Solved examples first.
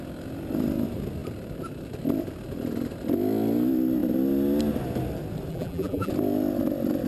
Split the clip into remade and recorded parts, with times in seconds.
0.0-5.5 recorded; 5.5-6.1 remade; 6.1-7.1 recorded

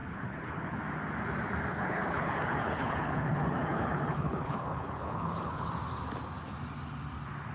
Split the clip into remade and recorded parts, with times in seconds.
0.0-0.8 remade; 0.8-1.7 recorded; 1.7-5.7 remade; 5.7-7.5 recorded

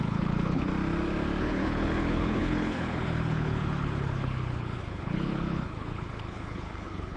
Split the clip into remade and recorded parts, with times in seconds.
0.0-0.7 remade; 0.7-1.4 recorded; 1.4-7.2 remade

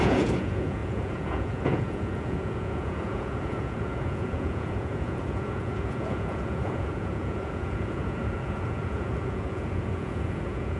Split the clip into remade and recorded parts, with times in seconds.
0.0-10.8 remade

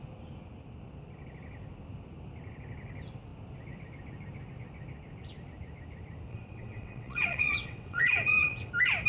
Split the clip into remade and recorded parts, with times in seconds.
0.0-6.3 recorded; 6.3-8.7 remade; 8.7-9.1 recorded

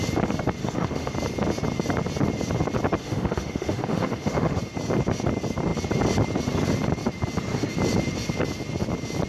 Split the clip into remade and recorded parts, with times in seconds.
0.0-0.6 recorded; 0.6-1.1 remade; 1.1-3.0 recorded; 3.0-4.6 remade; 4.6-9.3 recorded

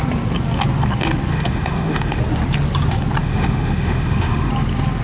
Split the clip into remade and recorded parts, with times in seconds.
0.0-1.3 recorded; 1.3-2.2 remade; 2.2-3.2 recorded; 3.2-4.5 remade; 4.5-5.0 recorded